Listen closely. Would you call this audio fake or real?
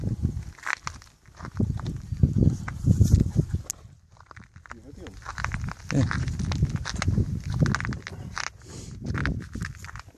real